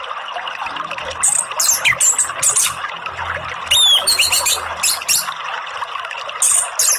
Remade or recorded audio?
recorded